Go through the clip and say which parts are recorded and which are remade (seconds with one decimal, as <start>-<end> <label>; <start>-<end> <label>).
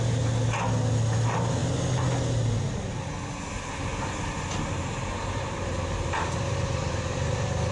0.0-7.7 recorded